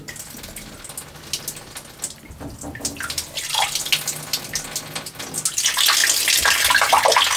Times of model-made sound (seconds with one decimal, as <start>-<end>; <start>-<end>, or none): none